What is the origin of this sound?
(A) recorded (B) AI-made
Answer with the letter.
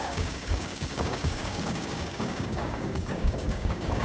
B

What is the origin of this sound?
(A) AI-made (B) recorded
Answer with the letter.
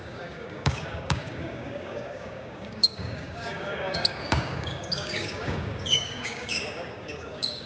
A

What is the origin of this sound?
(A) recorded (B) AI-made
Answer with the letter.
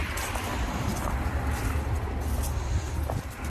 A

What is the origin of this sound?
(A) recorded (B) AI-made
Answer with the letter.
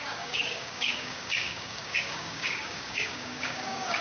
B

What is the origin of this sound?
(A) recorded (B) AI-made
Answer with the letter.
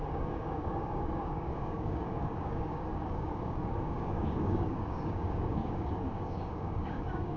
B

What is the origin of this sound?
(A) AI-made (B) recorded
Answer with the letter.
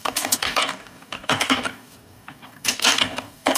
A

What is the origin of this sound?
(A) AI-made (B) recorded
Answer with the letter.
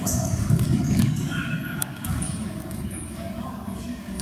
A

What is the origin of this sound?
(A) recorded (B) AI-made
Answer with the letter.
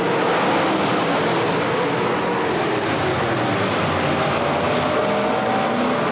A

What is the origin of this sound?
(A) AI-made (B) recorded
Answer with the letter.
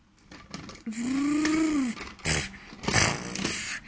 B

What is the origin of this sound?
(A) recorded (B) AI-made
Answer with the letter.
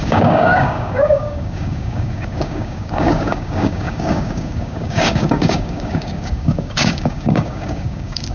B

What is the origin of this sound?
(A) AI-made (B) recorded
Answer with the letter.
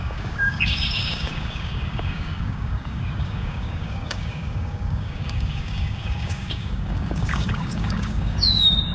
A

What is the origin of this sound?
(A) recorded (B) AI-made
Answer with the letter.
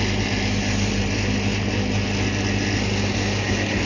A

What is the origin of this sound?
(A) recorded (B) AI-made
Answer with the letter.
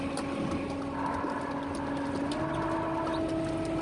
A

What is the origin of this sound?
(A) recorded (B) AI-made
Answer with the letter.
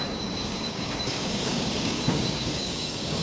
B